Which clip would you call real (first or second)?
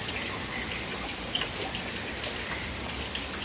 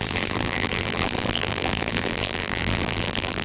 first